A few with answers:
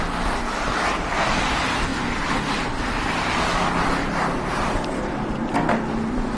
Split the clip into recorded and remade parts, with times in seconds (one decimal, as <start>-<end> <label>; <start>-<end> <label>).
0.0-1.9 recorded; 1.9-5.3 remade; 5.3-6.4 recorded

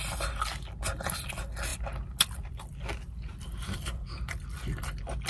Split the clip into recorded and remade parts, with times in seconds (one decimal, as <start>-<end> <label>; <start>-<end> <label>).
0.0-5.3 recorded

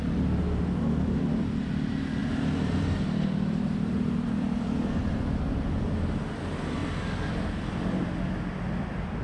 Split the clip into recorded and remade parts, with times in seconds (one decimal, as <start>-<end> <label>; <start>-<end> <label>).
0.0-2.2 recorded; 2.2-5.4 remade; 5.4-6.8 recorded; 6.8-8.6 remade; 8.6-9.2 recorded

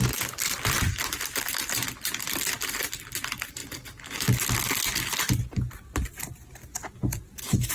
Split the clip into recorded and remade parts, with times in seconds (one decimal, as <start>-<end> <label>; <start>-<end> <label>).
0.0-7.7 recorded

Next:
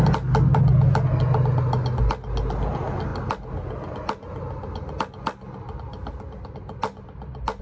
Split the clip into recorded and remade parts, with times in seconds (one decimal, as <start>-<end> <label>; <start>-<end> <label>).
0.0-7.6 recorded

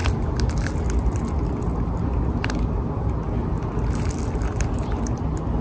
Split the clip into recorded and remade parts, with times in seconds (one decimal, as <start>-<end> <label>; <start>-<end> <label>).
0.0-5.6 recorded